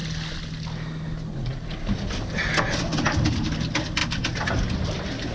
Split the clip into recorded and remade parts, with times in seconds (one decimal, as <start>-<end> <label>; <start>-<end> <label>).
0.0-5.3 recorded